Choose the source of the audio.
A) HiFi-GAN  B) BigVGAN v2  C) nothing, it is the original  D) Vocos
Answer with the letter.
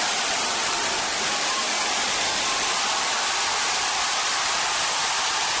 B